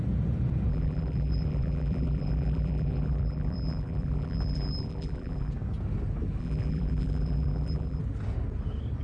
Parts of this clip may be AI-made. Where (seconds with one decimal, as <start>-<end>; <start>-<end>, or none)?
0.7-5.5; 6.4-8.0